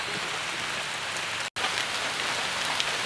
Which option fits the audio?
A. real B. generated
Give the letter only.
A